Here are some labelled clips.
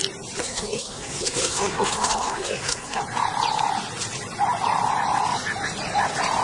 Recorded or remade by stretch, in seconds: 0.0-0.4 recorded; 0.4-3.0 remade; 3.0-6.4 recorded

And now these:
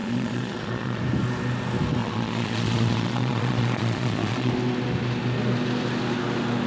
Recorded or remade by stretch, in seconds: 0.0-1.0 remade; 1.0-2.0 recorded; 2.0-4.5 remade; 4.5-6.7 recorded

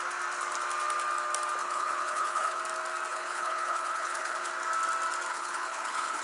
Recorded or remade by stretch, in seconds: 0.0-1.6 recorded; 1.6-2.6 remade; 2.6-3.1 recorded; 3.1-4.5 remade; 4.5-5.3 recorded; 5.3-6.2 remade

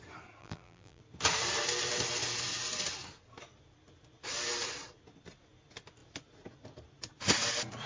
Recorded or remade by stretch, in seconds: 0.0-0.4 recorded; 0.4-1.0 remade; 1.0-7.9 recorded

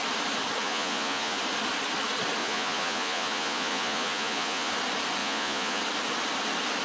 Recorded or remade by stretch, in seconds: 0.0-0.6 recorded; 0.6-1.4 remade; 1.4-2.4 recorded; 2.4-4.7 remade; 4.7-5.2 recorded; 5.2-5.8 remade; 5.8-6.8 recorded

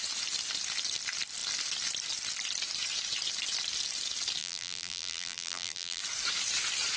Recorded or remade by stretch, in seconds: 0.0-4.4 recorded; 4.4-6.0 remade; 6.0-7.0 recorded